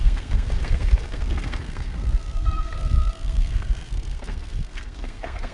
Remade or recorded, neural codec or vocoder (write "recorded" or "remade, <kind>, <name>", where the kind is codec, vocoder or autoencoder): remade, codec, SNAC